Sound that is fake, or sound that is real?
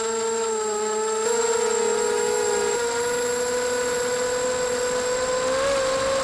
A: real